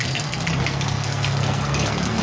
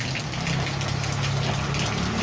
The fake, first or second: first